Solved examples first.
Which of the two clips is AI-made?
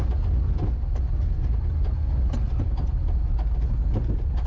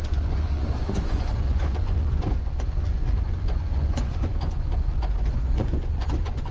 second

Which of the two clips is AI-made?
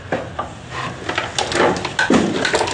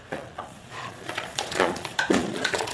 second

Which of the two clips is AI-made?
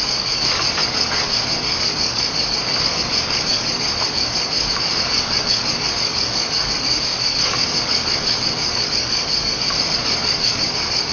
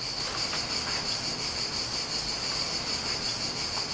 first